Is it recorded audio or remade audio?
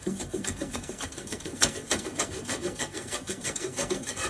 remade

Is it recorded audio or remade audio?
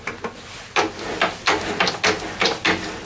recorded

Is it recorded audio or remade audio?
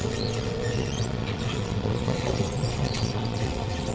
remade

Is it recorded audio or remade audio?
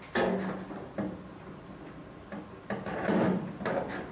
recorded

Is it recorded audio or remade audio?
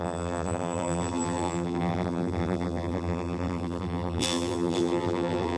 remade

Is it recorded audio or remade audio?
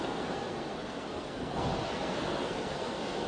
remade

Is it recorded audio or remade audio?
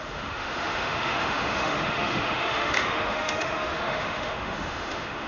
remade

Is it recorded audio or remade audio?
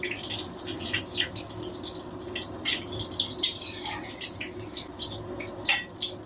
recorded